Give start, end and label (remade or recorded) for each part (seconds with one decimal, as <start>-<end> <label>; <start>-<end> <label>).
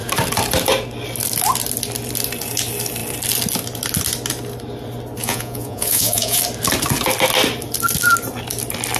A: 0.0-5.2 recorded; 5.2-6.4 remade; 6.4-9.0 recorded